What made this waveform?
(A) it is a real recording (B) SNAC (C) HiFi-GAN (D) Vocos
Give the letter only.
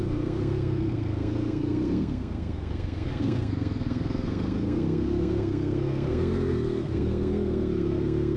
B